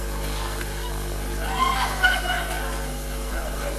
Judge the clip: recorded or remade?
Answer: remade